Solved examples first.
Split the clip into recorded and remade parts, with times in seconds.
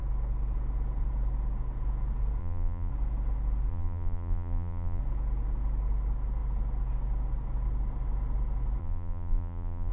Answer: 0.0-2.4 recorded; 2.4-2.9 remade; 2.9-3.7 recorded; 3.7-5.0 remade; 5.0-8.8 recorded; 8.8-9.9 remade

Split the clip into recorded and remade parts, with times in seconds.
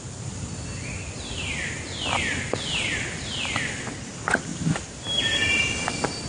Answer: 0.0-4.5 recorded; 4.5-5.7 remade; 5.7-6.3 recorded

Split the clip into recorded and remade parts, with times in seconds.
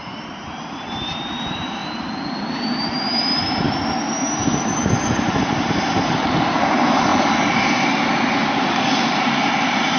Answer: 0.0-1.8 remade; 1.8-2.8 recorded; 2.8-7.1 remade; 7.1-9.2 recorded; 9.2-10.0 remade